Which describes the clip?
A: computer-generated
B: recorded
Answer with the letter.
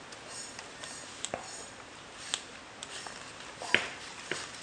B